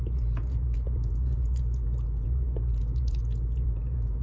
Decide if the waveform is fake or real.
fake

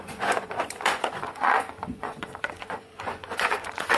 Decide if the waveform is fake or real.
fake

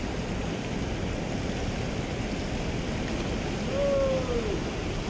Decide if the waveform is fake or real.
real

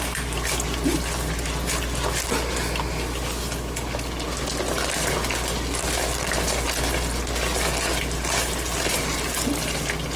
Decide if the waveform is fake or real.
real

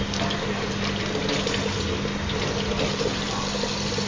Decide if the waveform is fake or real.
real